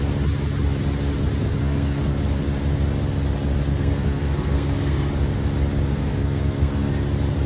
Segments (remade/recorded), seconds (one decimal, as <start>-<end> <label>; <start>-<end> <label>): 0.0-1.6 recorded; 1.6-2.2 remade; 2.2-3.7 recorded; 3.7-5.1 remade; 5.1-5.9 recorded; 5.9-6.9 remade; 6.9-7.5 recorded